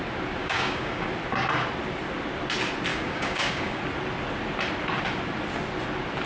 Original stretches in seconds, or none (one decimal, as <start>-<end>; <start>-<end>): 0.0-0.4; 1.1-2.9; 3.8-6.3